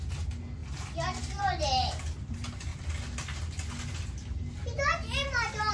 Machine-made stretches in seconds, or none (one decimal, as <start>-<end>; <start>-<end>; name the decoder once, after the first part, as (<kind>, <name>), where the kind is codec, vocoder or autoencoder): none